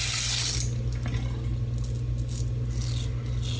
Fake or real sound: real